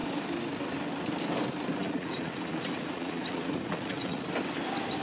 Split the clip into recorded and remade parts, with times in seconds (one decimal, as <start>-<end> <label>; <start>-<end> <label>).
0.0-1.8 recorded; 1.8-4.2 remade; 4.2-5.0 recorded

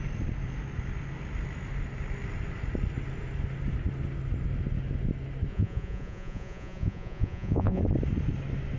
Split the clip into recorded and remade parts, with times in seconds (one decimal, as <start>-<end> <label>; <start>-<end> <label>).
0.0-5.5 recorded; 5.5-7.8 remade; 7.8-8.8 recorded

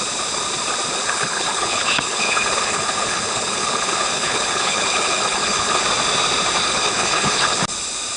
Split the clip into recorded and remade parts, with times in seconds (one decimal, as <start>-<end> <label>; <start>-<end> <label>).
0.0-0.9 recorded; 0.9-5.8 remade; 5.8-6.6 recorded; 6.6-7.6 remade; 7.6-8.2 recorded

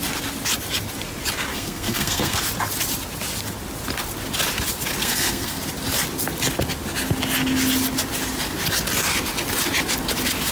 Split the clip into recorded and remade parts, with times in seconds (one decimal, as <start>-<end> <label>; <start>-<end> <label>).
0.0-1.5 recorded; 1.5-2.4 remade; 2.4-5.0 recorded; 5.0-5.6 remade; 5.6-10.5 recorded